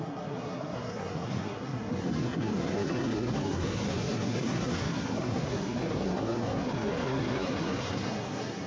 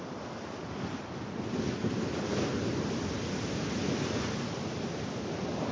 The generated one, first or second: first